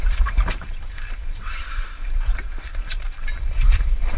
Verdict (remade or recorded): remade